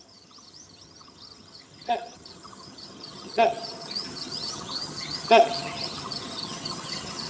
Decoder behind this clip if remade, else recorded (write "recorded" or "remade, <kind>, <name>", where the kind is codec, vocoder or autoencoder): remade, vocoder, HiFi-GAN